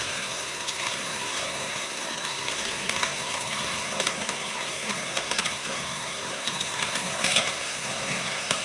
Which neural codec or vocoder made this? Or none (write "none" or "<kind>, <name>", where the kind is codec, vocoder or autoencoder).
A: codec, SNAC